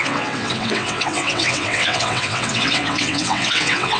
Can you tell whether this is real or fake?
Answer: fake